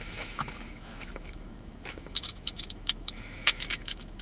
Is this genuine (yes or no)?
no